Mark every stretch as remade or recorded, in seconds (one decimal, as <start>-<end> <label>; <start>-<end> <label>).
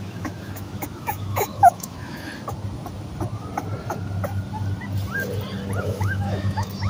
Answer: 0.0-2.3 remade; 2.3-5.8 recorded; 5.8-6.9 remade